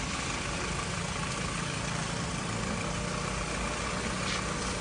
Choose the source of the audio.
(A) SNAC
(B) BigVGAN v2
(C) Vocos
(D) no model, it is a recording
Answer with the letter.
D